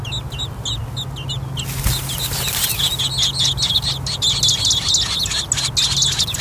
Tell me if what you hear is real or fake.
real